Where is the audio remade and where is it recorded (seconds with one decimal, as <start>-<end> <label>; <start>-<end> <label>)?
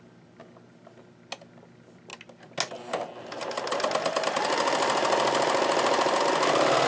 0.0-6.9 recorded